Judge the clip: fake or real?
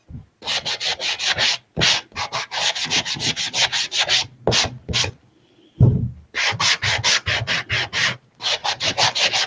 real